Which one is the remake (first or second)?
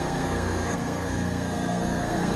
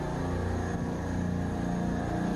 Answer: first